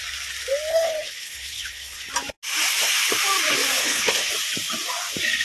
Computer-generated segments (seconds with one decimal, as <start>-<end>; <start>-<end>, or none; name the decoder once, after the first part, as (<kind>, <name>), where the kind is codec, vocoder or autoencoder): 0.7-2.1 (codec, HILCodec); 3.8-4.3